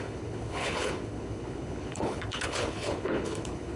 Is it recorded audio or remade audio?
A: remade